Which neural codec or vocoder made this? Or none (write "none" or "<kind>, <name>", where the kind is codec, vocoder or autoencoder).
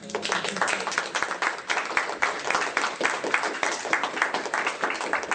none